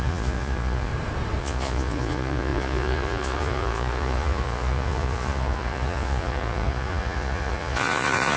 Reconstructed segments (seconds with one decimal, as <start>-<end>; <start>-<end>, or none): 0.0-0.9; 1.4-8.4